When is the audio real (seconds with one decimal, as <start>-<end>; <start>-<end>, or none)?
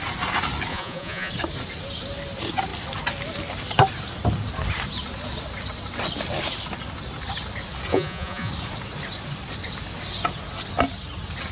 0.0-0.7; 1.3-7.9; 8.5-11.5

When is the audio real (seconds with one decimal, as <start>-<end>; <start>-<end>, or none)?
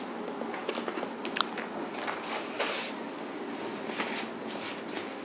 0.0-5.2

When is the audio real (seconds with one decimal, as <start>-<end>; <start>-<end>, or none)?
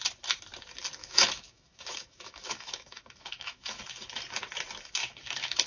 0.0-1.0; 3.8-5.0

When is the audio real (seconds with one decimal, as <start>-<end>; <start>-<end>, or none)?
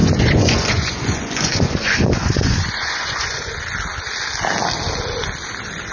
3.5-5.9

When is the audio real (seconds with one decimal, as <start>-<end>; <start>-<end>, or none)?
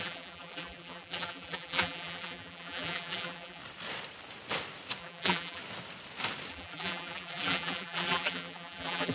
3.6-5.0; 5.6-6.5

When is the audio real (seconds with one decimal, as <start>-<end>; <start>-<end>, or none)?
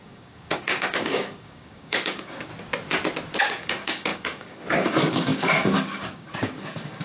2.5-3.4